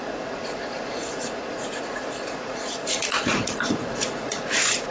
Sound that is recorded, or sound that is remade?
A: remade